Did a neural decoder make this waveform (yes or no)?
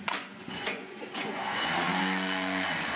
yes